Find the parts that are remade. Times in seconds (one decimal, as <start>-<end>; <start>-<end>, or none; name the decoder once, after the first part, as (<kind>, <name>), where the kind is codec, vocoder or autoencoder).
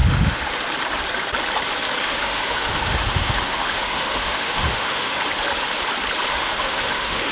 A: 0.0-0.5 (autoencoder, DAC-VAE); 2.0-5.2; 6.3-7.3